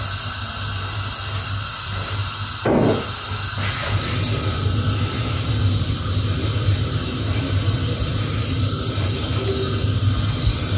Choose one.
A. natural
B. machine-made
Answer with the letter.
A